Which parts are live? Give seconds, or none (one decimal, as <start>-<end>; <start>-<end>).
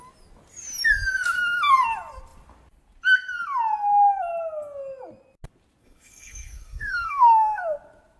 0.0-5.8; 7.6-8.2